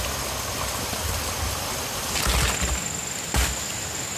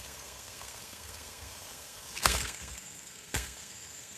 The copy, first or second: second